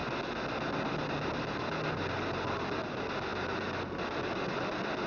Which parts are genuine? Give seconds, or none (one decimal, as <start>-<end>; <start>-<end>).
0.0-5.1